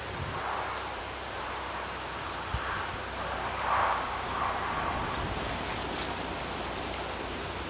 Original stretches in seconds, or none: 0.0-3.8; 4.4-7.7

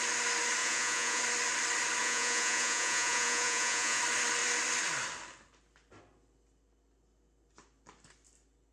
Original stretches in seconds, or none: 0.0-0.6; 1.2-2.0; 4.0-8.7

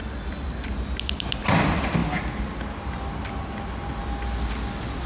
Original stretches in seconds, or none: 0.0-5.1

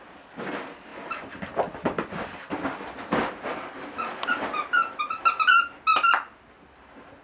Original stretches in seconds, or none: 0.0-7.2

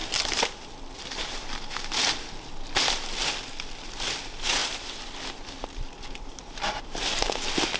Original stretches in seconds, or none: 1.2-4.6; 6.6-7.8

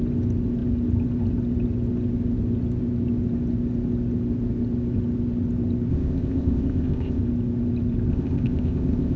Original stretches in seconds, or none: 0.0-5.9; 7.2-8.1

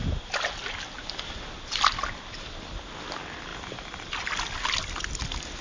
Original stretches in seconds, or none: 0.0-3.5; 4.4-5.6